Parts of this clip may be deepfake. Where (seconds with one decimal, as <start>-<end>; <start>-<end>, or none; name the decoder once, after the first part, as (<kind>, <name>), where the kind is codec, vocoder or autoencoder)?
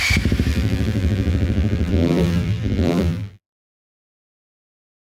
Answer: 0.5-3.6 (vocoder, BigVGAN v2)